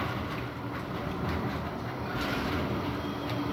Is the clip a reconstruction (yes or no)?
yes